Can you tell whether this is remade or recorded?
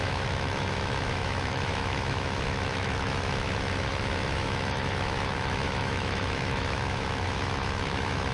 remade